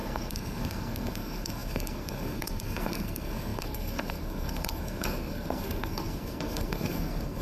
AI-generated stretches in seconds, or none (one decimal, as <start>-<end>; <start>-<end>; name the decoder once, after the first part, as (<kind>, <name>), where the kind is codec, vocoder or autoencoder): 0.0-7.4 (codec, SNAC)